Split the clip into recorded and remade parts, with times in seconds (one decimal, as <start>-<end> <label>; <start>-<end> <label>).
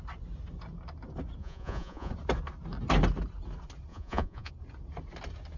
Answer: 0.0-1.4 recorded; 1.4-2.1 remade; 2.1-3.9 recorded; 3.9-4.5 remade; 4.5-5.6 recorded